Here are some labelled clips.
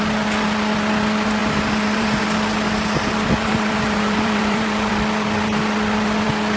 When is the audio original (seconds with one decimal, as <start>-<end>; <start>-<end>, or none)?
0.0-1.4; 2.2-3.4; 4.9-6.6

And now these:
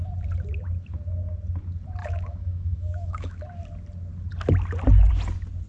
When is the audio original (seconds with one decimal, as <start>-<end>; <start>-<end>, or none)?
0.0-2.0; 3.4-5.7

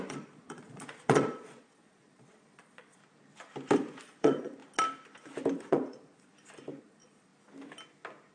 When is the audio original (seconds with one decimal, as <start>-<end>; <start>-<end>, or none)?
3.0-4.0; 4.6-5.7; 6.3-6.8; 7.3-8.3